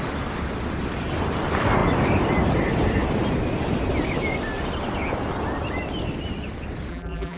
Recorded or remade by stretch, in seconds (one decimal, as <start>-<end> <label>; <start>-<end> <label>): 0.0-6.9 recorded; 6.9-7.4 remade